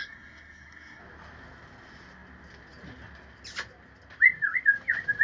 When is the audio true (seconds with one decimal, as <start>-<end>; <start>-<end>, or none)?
1.0-5.2